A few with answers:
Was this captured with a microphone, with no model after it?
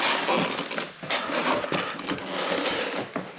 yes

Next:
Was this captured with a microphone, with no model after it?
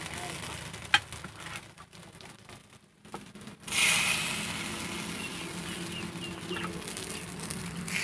yes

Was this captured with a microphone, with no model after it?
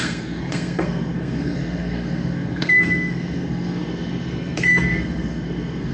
no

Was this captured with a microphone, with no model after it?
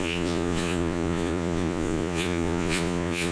no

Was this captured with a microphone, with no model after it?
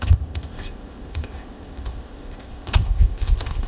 no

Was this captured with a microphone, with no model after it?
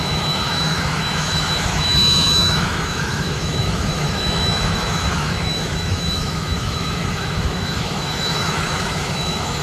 no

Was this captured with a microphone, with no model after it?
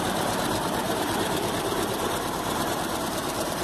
no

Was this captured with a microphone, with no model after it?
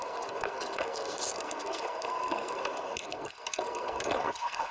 no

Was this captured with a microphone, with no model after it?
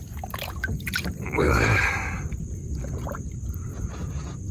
no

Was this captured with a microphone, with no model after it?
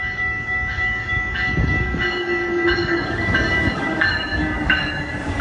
no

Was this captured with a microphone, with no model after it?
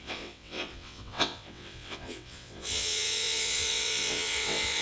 no